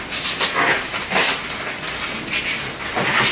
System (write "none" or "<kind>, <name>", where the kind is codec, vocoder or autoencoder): none